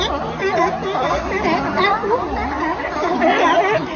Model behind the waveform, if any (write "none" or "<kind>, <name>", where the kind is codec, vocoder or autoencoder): none